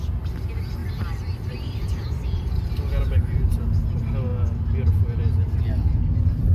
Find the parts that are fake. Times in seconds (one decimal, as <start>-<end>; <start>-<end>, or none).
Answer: 0.8-2.5